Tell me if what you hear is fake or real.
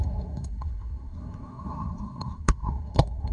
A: fake